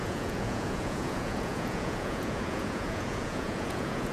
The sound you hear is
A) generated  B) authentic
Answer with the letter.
A